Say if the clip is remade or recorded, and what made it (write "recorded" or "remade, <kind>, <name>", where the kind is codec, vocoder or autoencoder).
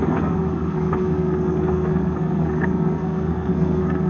remade, codec, SNAC